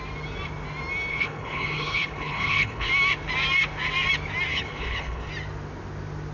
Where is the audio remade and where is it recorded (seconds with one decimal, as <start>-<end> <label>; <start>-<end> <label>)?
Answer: 0.0-1.1 recorded; 1.1-2.9 remade; 2.9-4.5 recorded; 4.5-5.3 remade; 5.3-6.3 recorded